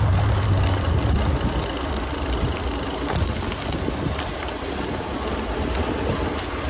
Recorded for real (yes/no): yes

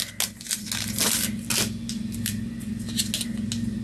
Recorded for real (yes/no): yes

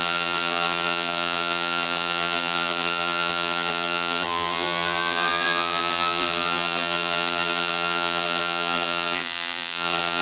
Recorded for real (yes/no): no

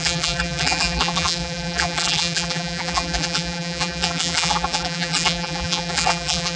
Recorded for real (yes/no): no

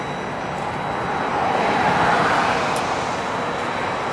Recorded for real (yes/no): yes